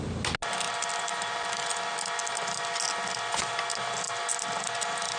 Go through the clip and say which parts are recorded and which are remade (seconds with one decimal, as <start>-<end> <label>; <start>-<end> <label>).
0.0-5.2 recorded